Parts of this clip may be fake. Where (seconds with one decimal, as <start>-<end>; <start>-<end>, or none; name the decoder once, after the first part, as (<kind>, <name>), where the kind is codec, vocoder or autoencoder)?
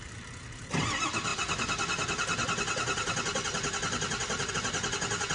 none